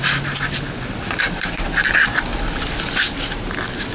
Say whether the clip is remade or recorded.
recorded